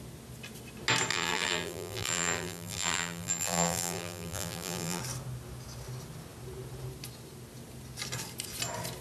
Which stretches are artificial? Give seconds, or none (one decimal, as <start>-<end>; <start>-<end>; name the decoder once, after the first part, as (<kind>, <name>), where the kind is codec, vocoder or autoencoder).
1.1-5.0 (vocoder, BigVGAN v2)